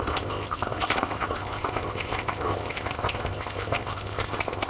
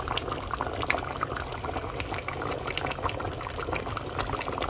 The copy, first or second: first